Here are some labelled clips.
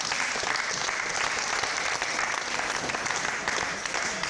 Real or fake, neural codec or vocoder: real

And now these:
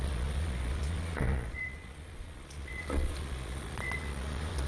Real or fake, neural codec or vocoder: fake, vocoder, Vocos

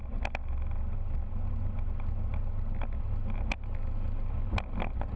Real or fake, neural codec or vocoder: real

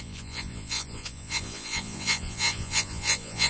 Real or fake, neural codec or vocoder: fake, vocoder, Vocos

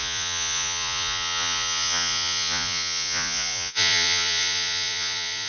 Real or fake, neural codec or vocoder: fake, vocoder, Vocos